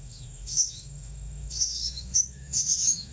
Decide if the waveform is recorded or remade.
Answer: remade